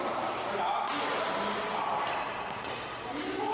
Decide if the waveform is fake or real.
real